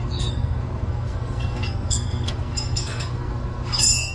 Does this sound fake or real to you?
fake